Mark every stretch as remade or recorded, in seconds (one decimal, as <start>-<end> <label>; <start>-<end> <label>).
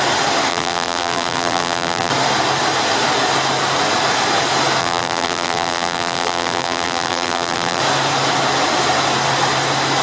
0.0-0.5 recorded; 0.5-2.1 remade; 2.1-4.8 recorded; 4.8-7.8 remade; 7.8-10.0 recorded